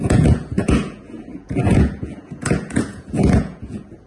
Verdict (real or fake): fake